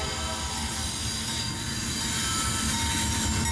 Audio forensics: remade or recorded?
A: recorded